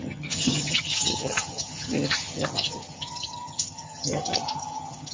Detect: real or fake fake